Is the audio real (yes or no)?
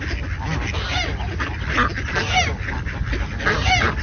yes